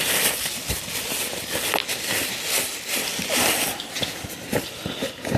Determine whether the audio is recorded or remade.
recorded